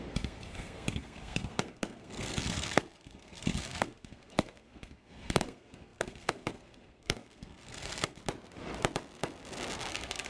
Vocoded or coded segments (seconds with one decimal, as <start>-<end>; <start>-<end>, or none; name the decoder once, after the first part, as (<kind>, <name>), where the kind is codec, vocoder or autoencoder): 0.0-8.2 (codec, SNAC); 9.9-10.3